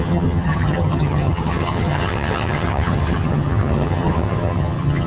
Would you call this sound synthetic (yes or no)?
yes